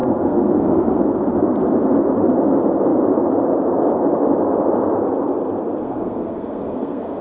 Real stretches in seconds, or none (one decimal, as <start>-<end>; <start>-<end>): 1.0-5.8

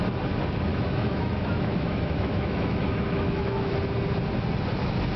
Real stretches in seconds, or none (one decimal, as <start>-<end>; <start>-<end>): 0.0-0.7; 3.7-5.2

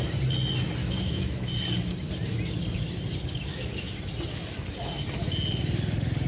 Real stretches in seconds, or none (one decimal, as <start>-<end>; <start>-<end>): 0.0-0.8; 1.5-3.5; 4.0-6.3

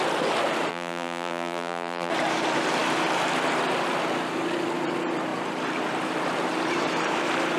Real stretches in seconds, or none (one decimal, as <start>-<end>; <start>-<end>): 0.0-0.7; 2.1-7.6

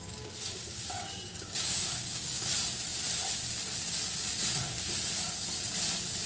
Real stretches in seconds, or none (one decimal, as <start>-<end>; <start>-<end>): 2.5-6.3